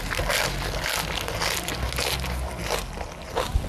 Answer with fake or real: real